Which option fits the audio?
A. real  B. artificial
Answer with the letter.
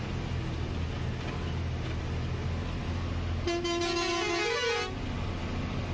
A